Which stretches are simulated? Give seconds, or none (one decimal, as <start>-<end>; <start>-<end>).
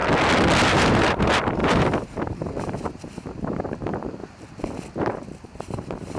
0.7-4.2; 5.0-6.2